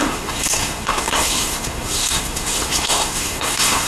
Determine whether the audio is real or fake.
fake